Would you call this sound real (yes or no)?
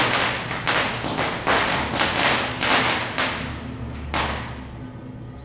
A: yes